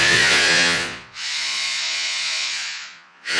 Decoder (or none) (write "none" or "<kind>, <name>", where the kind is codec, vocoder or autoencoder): vocoder, Vocos